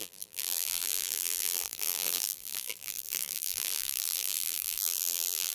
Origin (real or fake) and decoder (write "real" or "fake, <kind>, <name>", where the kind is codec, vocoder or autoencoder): fake, vocoder, BigVGAN v2